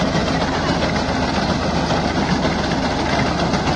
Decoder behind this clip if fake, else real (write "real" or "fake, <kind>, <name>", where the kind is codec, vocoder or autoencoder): real